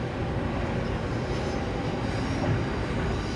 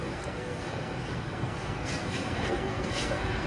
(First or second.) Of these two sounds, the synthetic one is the second